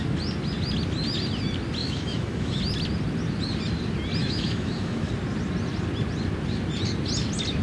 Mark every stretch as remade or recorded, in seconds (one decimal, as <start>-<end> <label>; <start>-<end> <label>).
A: 0.0-1.8 recorded; 1.8-2.6 remade; 2.6-4.2 recorded; 4.2-5.1 remade; 5.1-7.6 recorded